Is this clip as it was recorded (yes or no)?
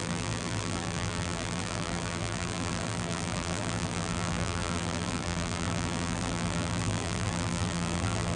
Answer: no